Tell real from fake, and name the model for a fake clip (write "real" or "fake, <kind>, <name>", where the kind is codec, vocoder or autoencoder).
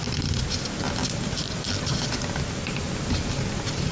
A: real